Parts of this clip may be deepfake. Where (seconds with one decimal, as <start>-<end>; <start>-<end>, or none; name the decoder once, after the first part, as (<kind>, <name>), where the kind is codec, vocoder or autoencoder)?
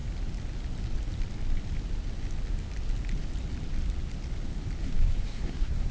4.8-5.9 (codec, SNAC)